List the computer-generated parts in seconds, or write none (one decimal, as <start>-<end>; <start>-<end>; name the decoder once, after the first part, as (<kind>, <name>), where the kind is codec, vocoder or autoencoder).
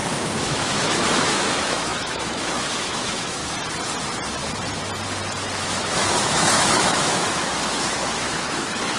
0.0-3.4 (autoencoder, DAC-VAE); 5.6-9.0